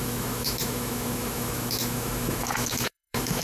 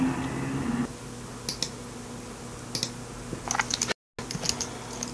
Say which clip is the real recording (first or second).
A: second